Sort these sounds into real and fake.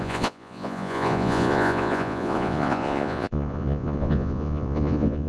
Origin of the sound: fake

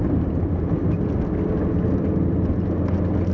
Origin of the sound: real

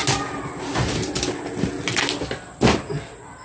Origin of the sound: real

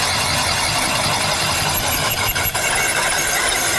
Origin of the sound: real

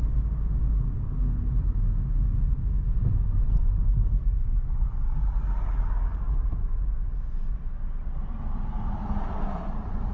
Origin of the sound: real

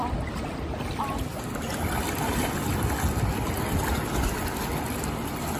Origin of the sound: real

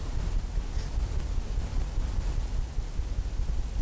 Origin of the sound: real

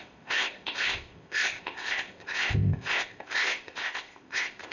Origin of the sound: fake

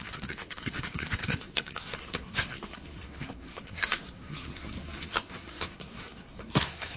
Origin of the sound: fake